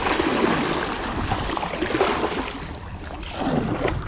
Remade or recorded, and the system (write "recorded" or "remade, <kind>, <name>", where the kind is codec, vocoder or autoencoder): recorded